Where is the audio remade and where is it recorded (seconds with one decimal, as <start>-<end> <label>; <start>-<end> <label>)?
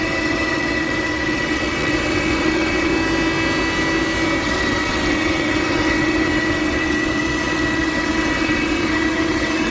0.0-2.9 remade; 2.9-4.4 recorded; 4.4-9.7 remade